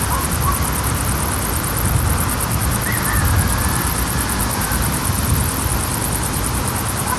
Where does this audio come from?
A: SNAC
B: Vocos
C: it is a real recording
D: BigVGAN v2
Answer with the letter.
C